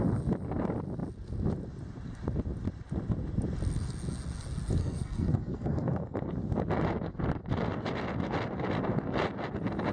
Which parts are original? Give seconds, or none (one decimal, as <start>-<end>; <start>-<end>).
0.0-4.8; 6.3-9.9